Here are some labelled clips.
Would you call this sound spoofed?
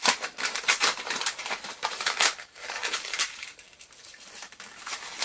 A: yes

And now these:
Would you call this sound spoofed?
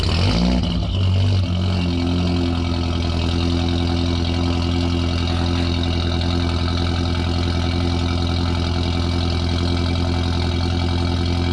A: no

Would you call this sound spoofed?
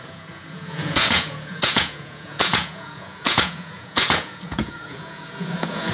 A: yes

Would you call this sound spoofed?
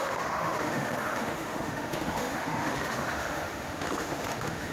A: yes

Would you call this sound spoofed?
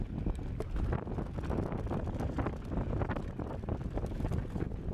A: no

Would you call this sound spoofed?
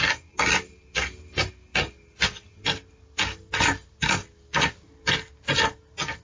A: no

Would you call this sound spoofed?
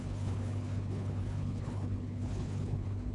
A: yes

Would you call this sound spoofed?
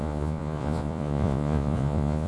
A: yes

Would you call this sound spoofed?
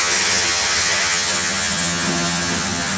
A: yes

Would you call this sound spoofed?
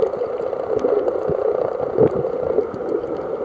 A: no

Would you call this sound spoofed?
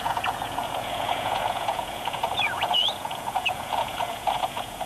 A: yes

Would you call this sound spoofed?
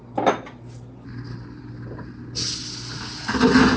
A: no